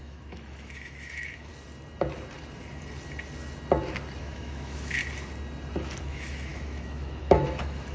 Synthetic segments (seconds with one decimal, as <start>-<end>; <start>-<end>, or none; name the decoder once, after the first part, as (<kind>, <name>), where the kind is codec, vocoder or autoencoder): 0.0-1.5 (autoencoder, DAC-VAE); 4.2-5.0; 6.0-7.9